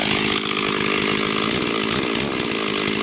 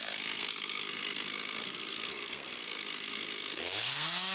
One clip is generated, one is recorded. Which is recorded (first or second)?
first